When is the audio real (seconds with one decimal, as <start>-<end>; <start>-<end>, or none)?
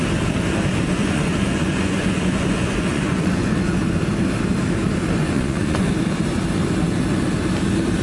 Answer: 0.0-0.8; 3.8-5.2; 5.9-8.0